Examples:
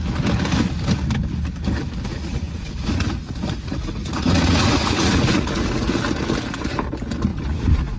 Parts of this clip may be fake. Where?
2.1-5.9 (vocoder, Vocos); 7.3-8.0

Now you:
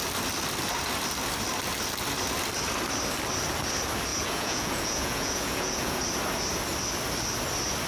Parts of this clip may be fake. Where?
4.1-6.0 (vocoder, Vocos)

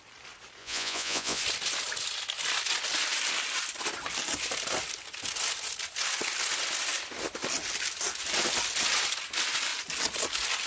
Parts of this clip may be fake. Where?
0.6-1.4 (vocoder, Vocos)

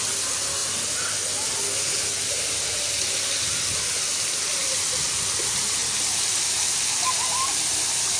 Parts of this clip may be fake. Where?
none

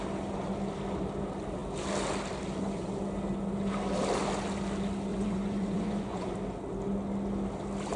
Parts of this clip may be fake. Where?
5.1-6.3 (vocoder, Vocos)

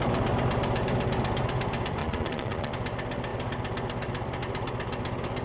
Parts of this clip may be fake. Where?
2.0-2.7 (vocoder, Vocos)

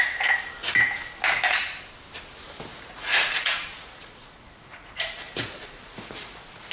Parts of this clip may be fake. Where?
2.7-6.7 (vocoder, Vocos)